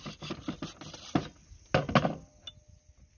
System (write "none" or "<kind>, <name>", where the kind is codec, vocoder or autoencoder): none